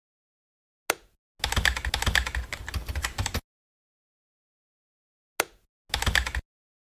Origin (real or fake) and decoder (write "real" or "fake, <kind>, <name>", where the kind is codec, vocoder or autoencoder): real